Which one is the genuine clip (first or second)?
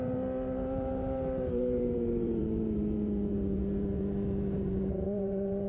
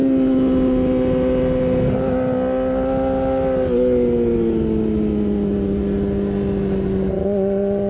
second